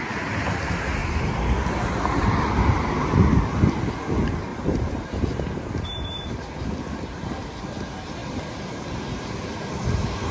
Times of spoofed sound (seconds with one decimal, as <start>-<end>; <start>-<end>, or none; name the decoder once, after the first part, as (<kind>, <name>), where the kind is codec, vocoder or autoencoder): 1.0-3.1 (vocoder, BigVGAN v2); 4.5-6.7